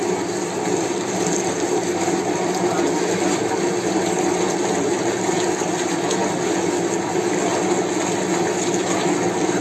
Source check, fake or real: real